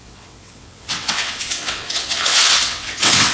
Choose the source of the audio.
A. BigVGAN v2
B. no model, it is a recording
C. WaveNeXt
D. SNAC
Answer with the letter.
C